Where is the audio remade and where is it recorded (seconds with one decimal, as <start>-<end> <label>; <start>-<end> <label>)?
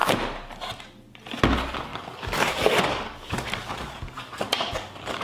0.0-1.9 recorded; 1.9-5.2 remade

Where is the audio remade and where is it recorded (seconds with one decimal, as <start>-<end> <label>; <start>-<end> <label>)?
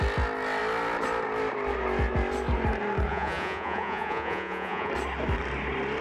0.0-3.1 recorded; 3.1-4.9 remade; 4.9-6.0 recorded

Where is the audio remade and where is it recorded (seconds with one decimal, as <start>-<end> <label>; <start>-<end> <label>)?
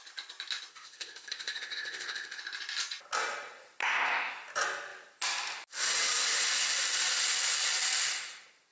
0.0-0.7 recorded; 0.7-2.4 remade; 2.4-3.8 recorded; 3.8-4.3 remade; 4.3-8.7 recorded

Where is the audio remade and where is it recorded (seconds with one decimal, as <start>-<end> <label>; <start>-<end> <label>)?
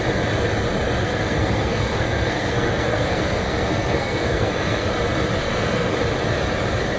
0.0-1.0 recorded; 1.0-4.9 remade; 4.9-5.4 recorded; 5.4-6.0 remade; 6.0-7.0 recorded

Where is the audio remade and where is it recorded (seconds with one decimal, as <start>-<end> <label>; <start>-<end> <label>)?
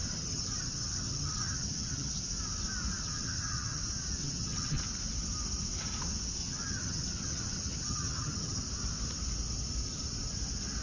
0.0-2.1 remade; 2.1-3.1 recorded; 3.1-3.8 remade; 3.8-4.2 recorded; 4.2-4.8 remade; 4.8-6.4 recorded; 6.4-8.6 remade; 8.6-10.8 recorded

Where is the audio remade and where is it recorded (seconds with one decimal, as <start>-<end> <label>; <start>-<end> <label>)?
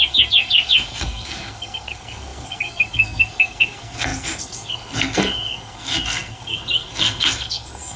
0.0-8.0 remade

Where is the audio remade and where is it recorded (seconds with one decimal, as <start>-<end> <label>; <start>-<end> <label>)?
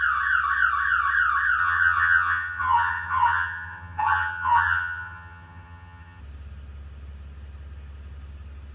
0.0-1.6 recorded; 1.6-6.2 remade; 6.2-8.7 recorded